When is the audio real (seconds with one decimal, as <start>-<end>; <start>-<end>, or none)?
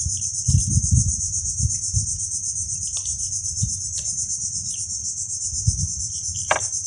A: 5.0-5.8